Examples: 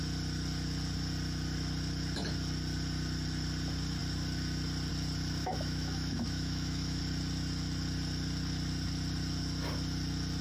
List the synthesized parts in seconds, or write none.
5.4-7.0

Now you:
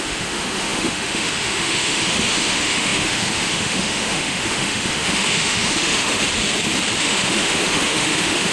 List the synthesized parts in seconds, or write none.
0.0-6.3; 7.0-8.5

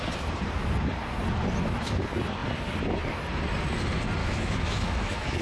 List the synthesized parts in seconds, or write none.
4.2-5.4

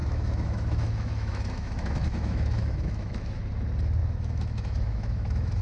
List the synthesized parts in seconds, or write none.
0.0-3.4; 4.0-5.6

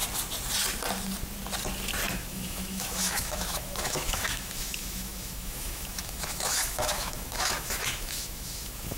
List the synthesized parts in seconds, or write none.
2.1-9.0

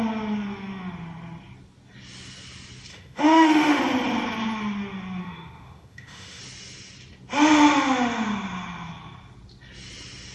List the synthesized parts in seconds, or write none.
2.9-3.8; 5.2-6.4

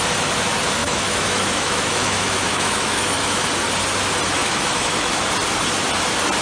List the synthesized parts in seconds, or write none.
0.8-3.5; 4.4-5.2

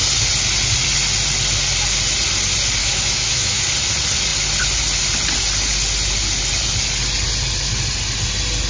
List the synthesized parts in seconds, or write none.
2.8-3.6